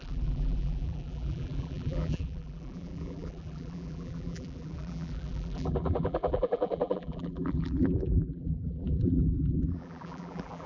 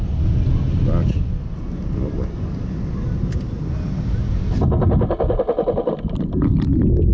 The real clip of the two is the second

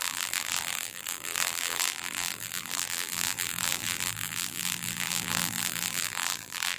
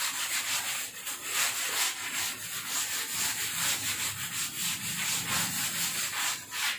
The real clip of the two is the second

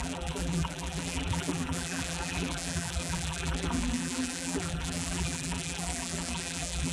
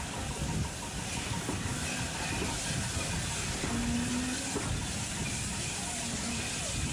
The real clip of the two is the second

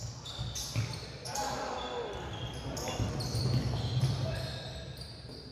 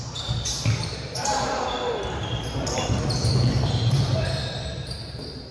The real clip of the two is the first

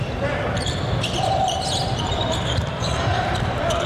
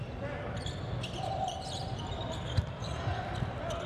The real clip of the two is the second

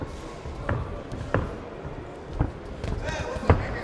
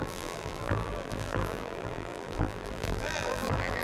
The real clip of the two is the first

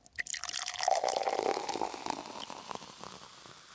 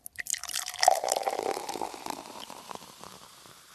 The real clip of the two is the first